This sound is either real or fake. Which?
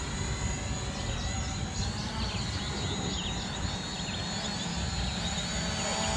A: real